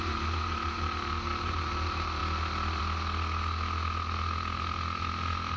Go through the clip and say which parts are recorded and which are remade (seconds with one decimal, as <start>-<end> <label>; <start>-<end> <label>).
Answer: 0.0-5.6 recorded